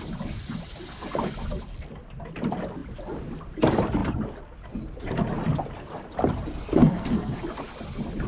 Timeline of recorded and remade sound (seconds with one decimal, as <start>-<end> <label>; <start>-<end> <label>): 0.0-6.8 recorded; 6.8-7.4 remade; 7.4-8.3 recorded